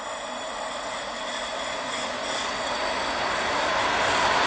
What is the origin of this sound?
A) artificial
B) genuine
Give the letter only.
B